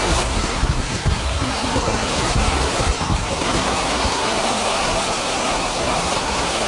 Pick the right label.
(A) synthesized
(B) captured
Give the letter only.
A